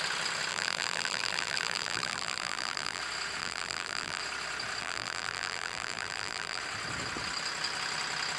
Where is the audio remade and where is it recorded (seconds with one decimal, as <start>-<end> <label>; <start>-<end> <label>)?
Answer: 0.0-0.5 recorded; 0.5-3.0 remade; 3.0-3.4 recorded; 3.4-4.2 remade; 4.2-4.8 recorded; 4.8-6.6 remade; 6.6-8.4 recorded